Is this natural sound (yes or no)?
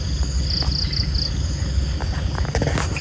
yes